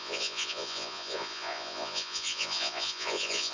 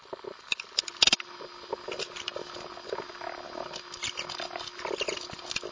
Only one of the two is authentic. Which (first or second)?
second